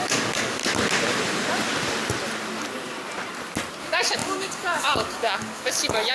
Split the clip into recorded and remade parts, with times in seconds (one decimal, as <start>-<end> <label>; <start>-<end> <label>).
0.0-0.6 remade; 0.6-3.8 recorded; 3.8-6.1 remade